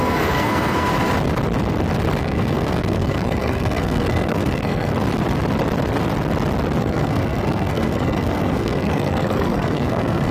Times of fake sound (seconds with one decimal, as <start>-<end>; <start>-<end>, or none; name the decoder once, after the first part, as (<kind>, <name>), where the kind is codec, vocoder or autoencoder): 0.0-0.9 (codec, SNAC); 2.2-4.9; 6.8-10.3